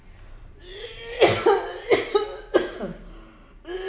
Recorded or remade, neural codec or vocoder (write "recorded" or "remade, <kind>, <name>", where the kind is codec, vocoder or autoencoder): recorded